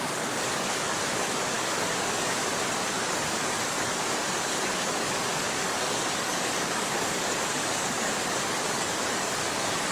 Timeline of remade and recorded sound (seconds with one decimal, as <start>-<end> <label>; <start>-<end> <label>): 0.0-2.5 remade; 2.5-3.0 recorded; 3.0-9.9 remade